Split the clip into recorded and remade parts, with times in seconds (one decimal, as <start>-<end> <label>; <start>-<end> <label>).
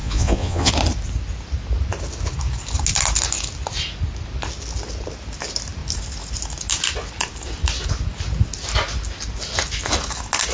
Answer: 0.0-0.7 remade; 0.7-10.5 recorded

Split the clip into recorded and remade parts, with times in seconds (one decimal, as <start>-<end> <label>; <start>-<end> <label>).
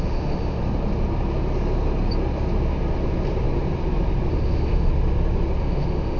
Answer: 0.0-0.6 remade; 0.6-4.3 recorded; 4.3-4.9 remade; 4.9-5.6 recorded; 5.6-6.2 remade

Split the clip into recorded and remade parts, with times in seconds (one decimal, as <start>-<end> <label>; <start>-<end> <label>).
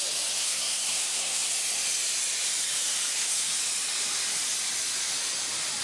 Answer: 0.0-0.4 recorded; 0.4-1.5 remade; 1.5-3.1 recorded; 3.1-3.6 remade; 3.6-5.8 recorded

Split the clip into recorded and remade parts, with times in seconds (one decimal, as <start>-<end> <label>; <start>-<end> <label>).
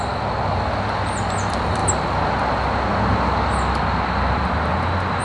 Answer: 0.0-5.2 recorded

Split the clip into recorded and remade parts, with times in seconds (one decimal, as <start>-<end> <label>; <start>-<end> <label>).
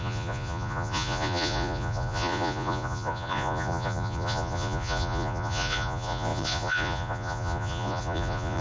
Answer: 0.0-8.6 remade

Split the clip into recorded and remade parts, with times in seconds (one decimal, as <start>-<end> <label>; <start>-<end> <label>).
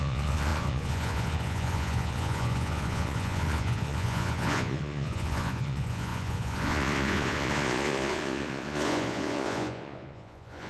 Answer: 0.0-10.7 remade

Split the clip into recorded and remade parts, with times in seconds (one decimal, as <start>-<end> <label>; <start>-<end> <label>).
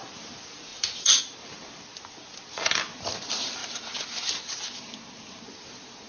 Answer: 0.0-6.1 recorded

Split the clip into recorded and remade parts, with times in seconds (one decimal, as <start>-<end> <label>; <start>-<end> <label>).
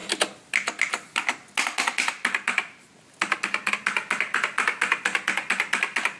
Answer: 0.0-6.2 recorded